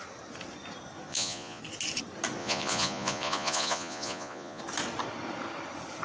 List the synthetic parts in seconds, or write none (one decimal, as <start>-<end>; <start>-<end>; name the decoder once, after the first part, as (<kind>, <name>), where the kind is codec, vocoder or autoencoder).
1.1-1.6 (vocoder, Vocos); 2.4-4.6

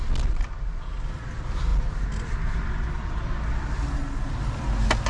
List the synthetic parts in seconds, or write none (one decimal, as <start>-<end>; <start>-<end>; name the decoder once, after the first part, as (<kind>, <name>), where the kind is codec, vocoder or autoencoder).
none

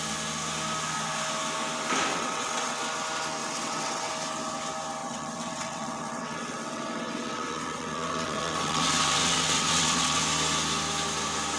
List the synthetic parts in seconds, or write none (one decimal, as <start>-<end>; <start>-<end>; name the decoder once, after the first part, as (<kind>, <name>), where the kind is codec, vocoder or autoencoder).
2.1-2.8 (vocoder, WaveNeXt); 3.4-4.1; 5.0-10.2

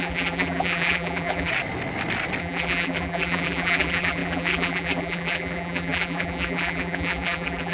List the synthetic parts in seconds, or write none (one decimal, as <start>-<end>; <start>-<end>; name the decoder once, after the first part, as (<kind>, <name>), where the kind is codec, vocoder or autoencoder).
0.0-1.5 (vocoder, BigVGAN v2); 2.4-7.7

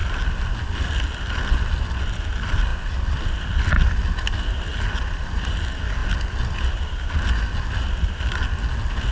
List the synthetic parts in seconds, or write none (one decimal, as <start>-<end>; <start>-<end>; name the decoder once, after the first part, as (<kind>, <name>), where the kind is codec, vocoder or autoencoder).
2.0-2.7 (vocoder, BigVGAN v2); 3.4-4.7; 5.2-6.0

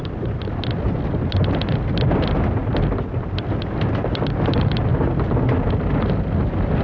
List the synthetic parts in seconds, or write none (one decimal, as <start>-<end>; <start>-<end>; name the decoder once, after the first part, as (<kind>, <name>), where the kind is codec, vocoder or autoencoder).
none